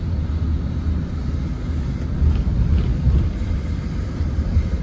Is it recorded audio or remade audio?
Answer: recorded